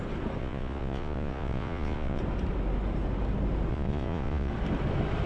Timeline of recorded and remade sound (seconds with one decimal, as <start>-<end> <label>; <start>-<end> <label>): 0.0-0.4 recorded; 0.4-2.2 remade; 2.2-3.7 recorded; 3.7-4.5 remade; 4.5-5.3 recorded